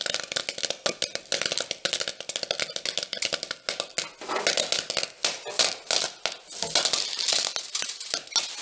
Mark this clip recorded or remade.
recorded